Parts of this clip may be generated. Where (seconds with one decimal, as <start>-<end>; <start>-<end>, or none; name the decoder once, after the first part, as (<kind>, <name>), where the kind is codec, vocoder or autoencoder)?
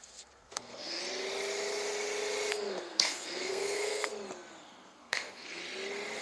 0.0-1.0 (codec, SNAC); 2.5-4.1; 4.6-5.6